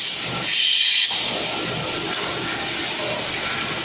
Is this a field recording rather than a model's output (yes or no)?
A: yes